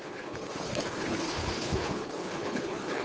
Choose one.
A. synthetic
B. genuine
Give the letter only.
A